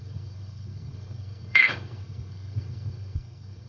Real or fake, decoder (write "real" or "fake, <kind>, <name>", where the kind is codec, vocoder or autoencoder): fake, codec, SNAC